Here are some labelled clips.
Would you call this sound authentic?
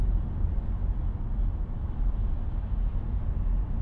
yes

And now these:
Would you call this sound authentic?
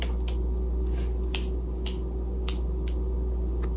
yes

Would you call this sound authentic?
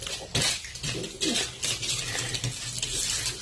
yes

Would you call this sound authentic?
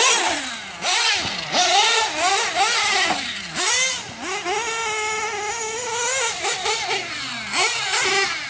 yes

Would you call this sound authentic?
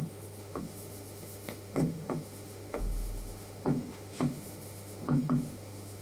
no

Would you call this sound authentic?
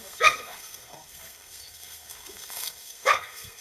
no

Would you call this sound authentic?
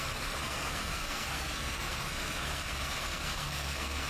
no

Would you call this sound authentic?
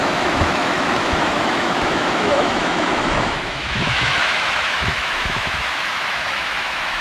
no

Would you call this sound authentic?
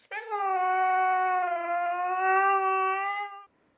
yes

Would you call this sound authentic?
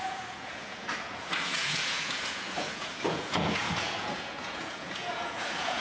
no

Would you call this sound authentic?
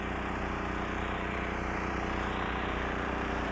no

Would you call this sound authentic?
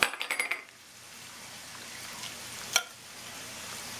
yes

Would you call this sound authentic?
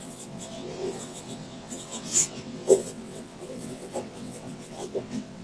no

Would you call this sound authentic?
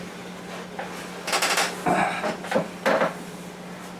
yes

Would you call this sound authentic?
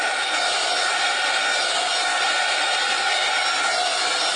yes